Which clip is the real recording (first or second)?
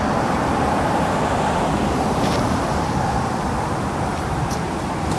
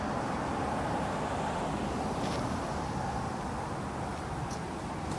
second